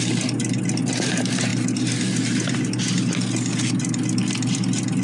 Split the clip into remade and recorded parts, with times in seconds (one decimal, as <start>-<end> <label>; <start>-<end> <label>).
0.0-5.0 recorded